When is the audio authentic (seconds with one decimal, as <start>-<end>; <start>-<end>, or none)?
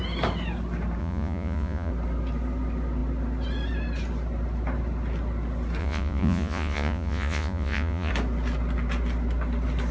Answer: 0.0-1.0; 1.9-5.8; 8.1-9.9